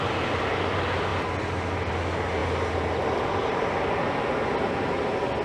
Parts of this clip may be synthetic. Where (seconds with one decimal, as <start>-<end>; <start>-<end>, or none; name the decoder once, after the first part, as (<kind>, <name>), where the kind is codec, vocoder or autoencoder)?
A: none